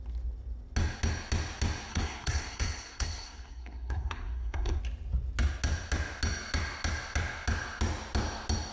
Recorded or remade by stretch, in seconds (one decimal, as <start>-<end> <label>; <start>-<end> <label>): 0.0-1.9 recorded; 1.9-4.8 remade; 4.8-8.7 recorded